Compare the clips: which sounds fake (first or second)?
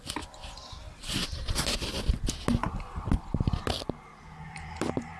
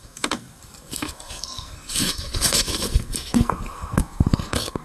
second